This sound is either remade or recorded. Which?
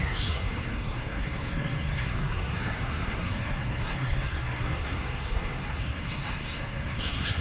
remade